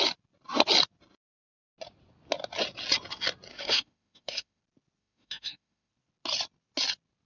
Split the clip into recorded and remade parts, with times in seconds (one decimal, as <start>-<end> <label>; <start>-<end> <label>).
0.0-3.5 recorded; 3.5-4.6 remade; 4.6-5.0 recorded; 5.0-5.9 remade; 5.9-7.3 recorded